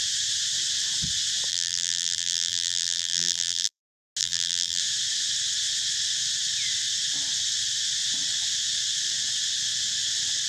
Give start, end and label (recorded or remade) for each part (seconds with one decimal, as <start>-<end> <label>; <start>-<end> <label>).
0.0-1.5 recorded; 1.5-3.8 remade; 3.8-4.2 recorded; 4.2-4.8 remade; 4.8-10.5 recorded